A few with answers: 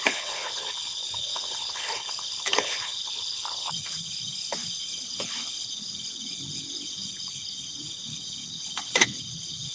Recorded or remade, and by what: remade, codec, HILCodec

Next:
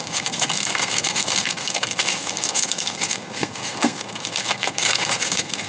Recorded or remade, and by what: remade, codec, SNAC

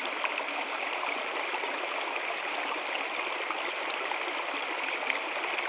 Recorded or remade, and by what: recorded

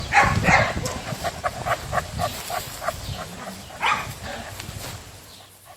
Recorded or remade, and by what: recorded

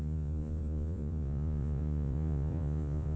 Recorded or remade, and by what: remade, vocoder, Vocos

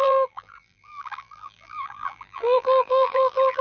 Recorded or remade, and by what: remade, vocoder, BigVGAN v2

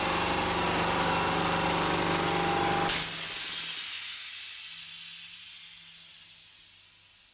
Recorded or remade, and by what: recorded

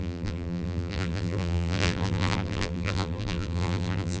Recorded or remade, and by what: remade, vocoder, BigVGAN v2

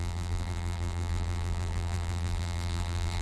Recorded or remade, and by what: remade, vocoder, BigVGAN v2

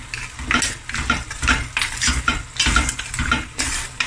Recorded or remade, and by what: recorded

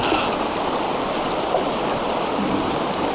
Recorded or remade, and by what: recorded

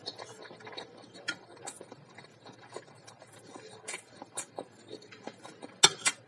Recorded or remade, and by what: recorded